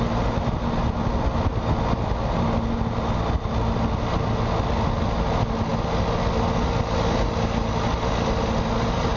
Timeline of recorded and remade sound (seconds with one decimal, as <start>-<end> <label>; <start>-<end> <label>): 0.0-9.2 recorded